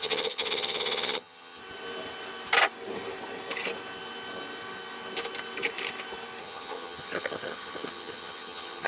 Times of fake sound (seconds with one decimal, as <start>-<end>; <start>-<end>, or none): 0.0-1.6; 6.4-8.9